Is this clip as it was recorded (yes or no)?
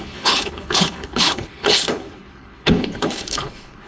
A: no